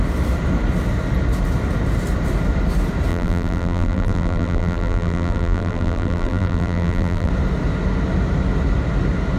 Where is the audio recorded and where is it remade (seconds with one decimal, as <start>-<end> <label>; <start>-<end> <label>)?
0.0-3.1 recorded; 3.1-7.3 remade; 7.3-9.4 recorded